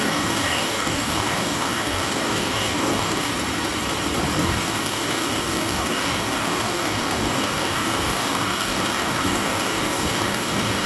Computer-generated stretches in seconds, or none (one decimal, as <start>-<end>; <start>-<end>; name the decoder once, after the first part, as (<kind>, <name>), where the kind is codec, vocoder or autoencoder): 0.0-3.3 (codec, DAC); 4.4-10.9